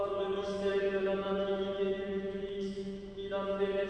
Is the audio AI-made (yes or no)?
yes